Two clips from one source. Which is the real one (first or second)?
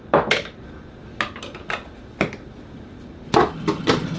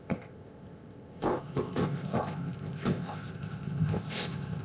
first